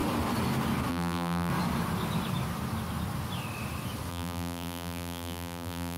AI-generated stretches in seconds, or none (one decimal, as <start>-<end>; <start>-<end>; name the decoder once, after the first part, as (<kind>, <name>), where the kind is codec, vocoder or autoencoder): 0.9-1.5 (vocoder, BigVGAN v2); 4.1-6.0